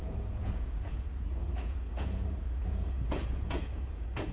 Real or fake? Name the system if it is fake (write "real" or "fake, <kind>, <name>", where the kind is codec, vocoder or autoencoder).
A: fake, vocoder, Vocos